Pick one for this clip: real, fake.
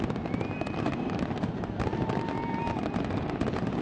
real